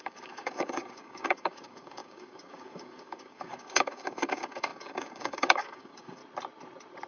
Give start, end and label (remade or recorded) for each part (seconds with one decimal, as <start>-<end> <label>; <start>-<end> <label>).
0.0-6.2 remade; 6.2-7.1 recorded